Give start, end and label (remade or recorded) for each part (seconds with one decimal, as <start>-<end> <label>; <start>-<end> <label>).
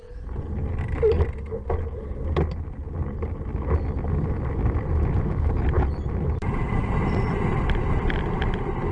0.0-8.9 recorded